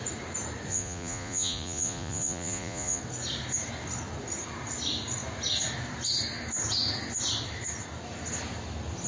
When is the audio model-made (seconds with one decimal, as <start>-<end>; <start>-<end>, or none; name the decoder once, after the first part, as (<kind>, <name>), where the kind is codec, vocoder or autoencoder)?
0.7-3.0 (vocoder, Vocos)